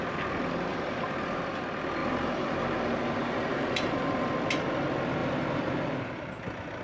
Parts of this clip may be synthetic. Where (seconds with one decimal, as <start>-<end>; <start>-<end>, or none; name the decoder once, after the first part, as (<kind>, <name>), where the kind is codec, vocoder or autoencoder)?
0.7-1.4 (vocoder, BigVGAN v2); 2.0-4.3; 5.2-6.2